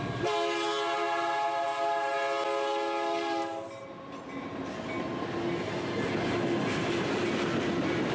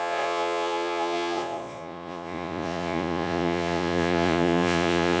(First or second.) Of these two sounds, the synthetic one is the second